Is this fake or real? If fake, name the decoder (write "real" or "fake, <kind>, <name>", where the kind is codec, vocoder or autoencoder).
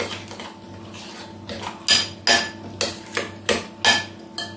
real